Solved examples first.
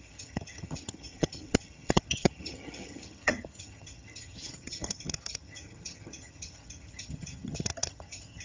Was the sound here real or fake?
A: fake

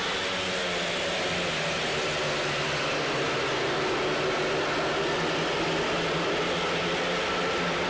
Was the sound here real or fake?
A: real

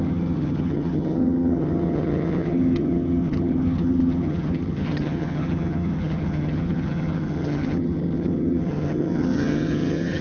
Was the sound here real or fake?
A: fake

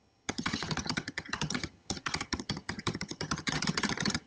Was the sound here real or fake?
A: fake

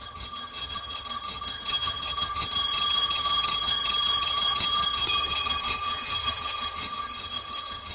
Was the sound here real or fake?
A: fake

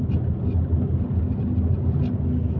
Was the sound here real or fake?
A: real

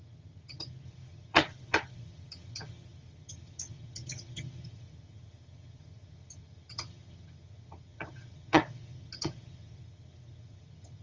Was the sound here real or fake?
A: fake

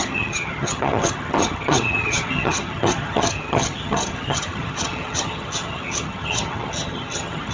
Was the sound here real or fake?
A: fake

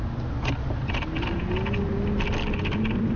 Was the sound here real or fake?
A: real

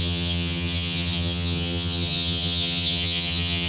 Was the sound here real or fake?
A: fake